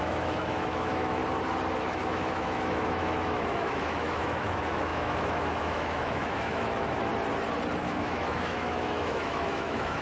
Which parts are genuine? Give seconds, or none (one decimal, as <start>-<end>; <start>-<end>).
1.2-1.8; 7.1-7.8